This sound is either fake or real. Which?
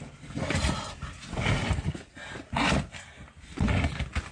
real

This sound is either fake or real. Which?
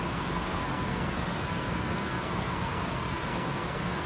fake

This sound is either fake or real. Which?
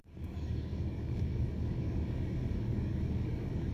fake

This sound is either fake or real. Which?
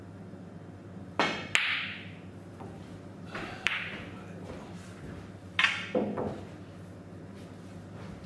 real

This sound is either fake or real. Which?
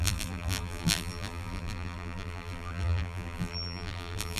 fake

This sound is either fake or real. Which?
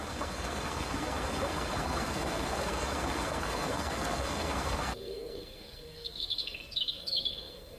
fake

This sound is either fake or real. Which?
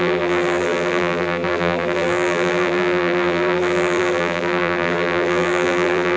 fake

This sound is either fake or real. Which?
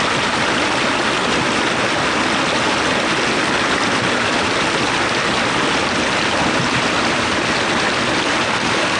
real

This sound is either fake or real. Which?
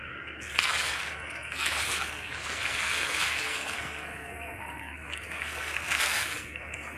fake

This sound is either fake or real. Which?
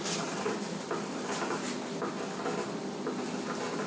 real